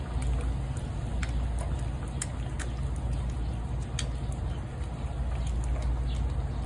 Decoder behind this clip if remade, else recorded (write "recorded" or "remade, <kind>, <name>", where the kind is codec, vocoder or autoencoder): recorded